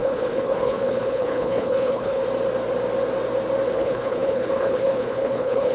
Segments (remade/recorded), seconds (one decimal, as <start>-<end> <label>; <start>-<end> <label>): 0.0-2.2 remade; 2.2-3.7 recorded; 3.7-5.7 remade